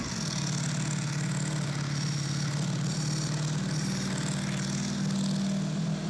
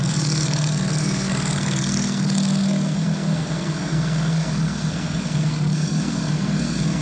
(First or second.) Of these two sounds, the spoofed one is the second